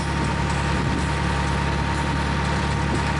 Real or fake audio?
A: real